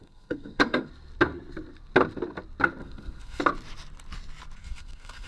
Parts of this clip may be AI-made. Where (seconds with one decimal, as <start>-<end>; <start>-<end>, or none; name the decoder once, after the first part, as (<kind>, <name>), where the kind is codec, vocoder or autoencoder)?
0.0-0.9 (codec, SNAC); 2.8-3.4; 4.6-5.3